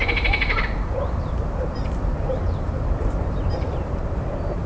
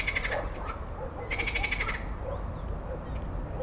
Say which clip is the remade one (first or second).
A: first